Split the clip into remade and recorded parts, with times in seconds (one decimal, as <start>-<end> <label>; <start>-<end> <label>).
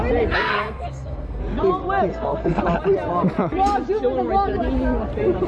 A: 0.0-0.4 recorded; 0.4-1.4 remade; 1.4-2.1 recorded; 2.1-2.6 remade; 2.6-5.5 recorded